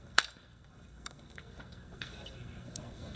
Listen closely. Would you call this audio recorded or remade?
remade